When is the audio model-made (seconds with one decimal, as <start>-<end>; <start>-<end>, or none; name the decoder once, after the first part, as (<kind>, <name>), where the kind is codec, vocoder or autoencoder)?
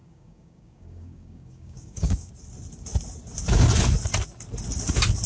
0.0-2.3 (codec, DAC)